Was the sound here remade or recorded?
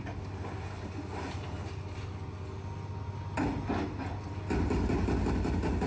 recorded